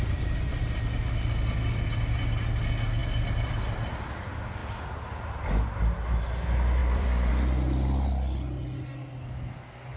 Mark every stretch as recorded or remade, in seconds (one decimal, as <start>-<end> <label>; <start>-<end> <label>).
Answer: 0.0-6.8 recorded; 6.8-7.3 remade; 7.3-10.0 recorded